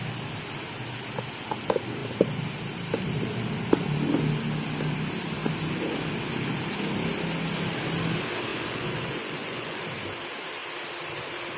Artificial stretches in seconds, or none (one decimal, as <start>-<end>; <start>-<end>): 8.5-9.8